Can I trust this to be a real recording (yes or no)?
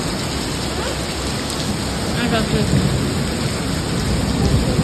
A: yes